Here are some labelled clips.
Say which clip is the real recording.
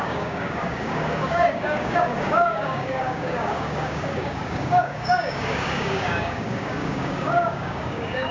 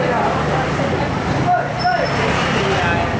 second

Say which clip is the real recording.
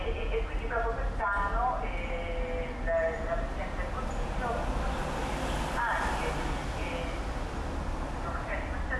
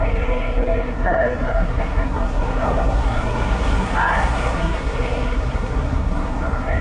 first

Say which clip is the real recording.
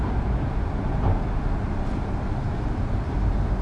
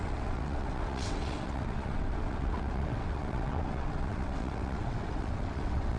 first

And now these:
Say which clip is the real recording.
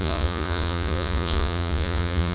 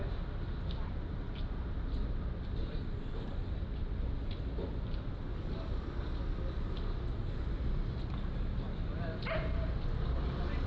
second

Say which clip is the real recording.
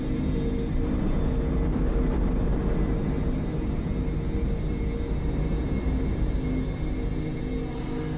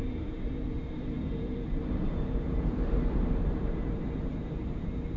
first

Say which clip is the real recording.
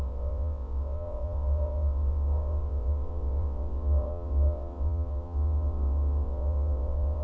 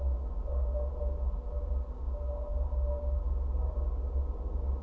second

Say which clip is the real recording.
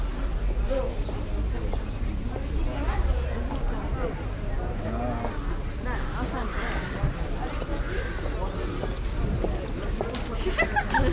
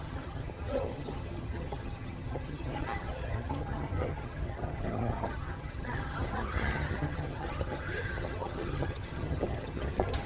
first